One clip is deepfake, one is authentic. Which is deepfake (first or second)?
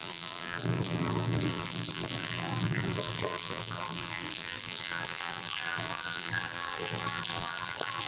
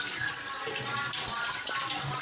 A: first